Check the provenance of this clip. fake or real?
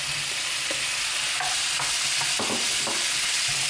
real